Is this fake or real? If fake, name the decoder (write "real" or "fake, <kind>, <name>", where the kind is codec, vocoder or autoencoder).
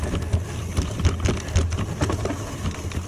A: real